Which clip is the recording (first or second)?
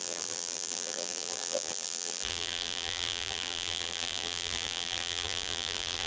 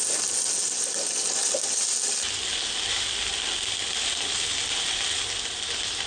second